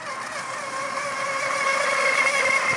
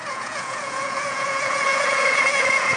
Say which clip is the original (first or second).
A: first